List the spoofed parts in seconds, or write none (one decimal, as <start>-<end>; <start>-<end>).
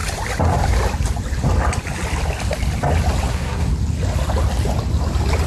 3.3-3.7